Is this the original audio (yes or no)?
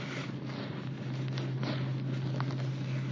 yes